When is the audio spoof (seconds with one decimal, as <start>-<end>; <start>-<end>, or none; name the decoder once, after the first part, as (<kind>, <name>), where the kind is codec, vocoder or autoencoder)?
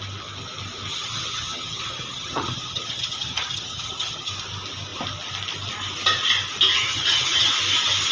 0.9-4.3 (vocoder, HiFi-GAN); 6.7-7.5